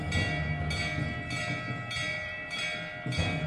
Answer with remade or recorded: recorded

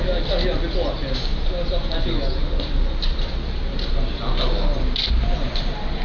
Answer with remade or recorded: recorded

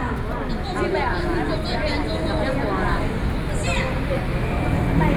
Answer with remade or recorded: recorded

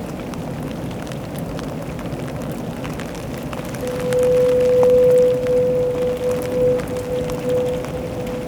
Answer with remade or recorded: recorded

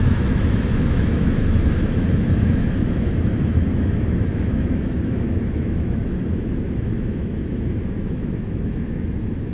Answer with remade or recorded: remade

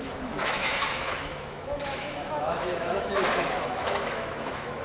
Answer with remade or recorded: remade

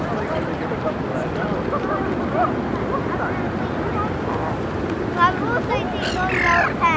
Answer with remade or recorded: recorded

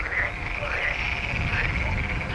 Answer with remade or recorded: recorded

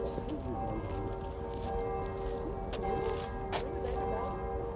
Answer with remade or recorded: recorded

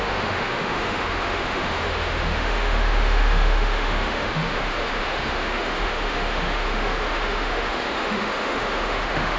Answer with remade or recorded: remade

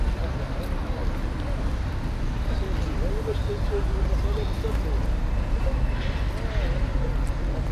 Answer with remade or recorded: recorded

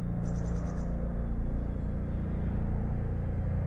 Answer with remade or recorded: recorded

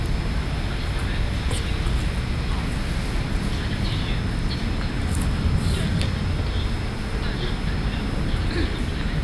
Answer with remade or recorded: recorded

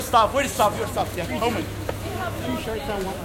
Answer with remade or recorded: remade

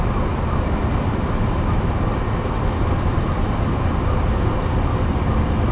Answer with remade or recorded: recorded